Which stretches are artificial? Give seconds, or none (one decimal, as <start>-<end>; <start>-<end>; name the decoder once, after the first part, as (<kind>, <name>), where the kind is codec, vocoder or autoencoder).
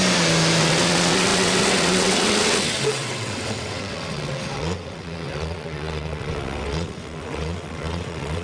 0.6-8.4 (vocoder, WaveNeXt)